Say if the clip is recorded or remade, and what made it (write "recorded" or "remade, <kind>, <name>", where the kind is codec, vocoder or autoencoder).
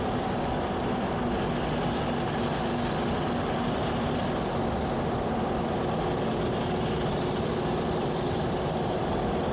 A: recorded